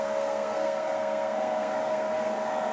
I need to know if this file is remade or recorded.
remade